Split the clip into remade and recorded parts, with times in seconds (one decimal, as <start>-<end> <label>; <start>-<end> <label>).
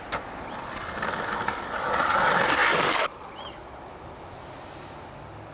0.0-5.5 recorded